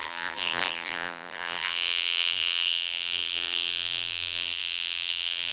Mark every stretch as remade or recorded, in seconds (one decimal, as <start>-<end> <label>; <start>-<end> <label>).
0.0-5.5 remade